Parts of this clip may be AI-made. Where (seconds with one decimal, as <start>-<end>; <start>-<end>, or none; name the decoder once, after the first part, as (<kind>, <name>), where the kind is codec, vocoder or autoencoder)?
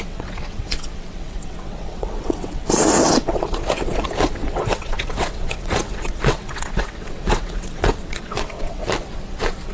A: 0.0-8.8 (vocoder, WaveNeXt)